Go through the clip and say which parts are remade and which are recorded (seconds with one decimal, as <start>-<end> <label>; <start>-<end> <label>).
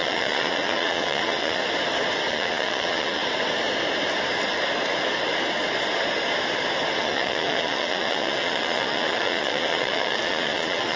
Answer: 0.0-1.6 remade; 1.6-2.3 recorded; 2.3-3.2 remade; 3.2-7.0 recorded; 7.0-11.0 remade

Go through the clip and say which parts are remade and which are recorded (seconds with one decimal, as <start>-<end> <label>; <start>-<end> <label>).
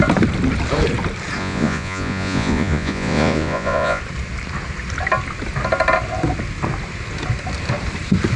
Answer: 0.0-1.4 recorded; 1.4-4.0 remade; 4.0-8.4 recorded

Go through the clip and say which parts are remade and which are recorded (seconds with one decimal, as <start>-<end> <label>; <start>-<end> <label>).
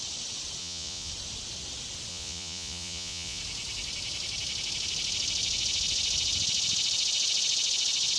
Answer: 0.0-0.6 recorded; 0.6-1.1 remade; 1.1-2.1 recorded; 2.1-3.4 remade; 3.4-8.2 recorded